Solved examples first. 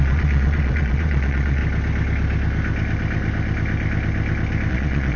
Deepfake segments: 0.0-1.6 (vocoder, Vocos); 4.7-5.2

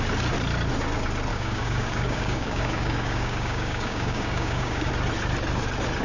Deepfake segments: 1.3-4.9 (codec, DAC)

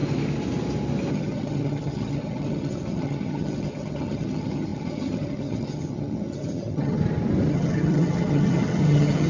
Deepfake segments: 1.1-7.0 (vocoder, HiFi-GAN); 7.5-9.3